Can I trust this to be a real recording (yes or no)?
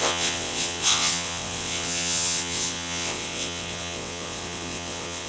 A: no